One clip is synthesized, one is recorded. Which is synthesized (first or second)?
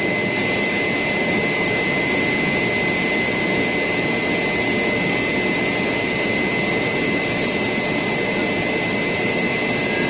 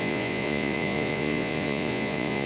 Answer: second